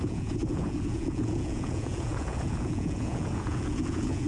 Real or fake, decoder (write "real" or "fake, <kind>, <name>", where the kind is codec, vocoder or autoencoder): fake, vocoder, Vocos